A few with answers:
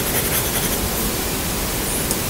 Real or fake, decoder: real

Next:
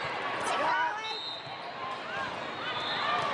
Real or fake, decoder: real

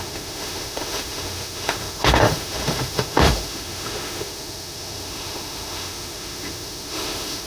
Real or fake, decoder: fake, autoencoder, DAC-VAE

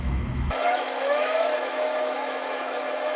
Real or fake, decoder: fake, autoencoder, DAC-VAE